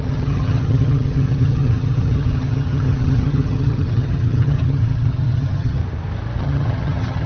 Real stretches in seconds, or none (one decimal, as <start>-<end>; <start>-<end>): 5.8-6.4

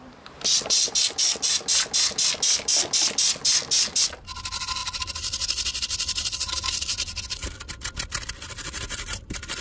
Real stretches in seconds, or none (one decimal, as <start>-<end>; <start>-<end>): 0.0-9.6

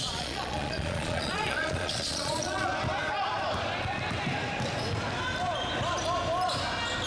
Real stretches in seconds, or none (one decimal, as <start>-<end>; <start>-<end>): 2.7-7.1

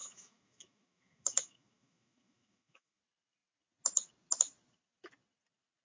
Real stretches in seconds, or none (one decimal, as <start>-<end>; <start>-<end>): 3.0-5.8

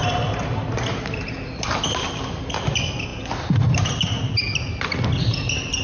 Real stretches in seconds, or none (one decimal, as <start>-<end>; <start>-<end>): 0.0-5.8

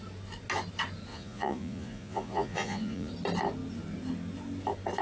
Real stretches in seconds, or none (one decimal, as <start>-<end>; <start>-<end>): 0.0-1.1; 3.1-5.0